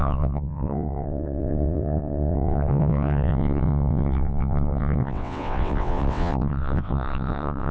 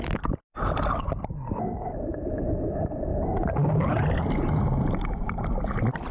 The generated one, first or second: first